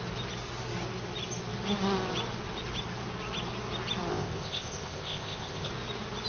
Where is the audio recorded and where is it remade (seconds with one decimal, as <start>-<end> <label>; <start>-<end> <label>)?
0.0-4.1 recorded; 4.1-5.7 remade; 5.7-6.3 recorded